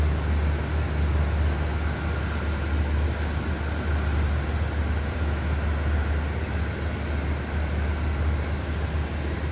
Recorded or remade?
recorded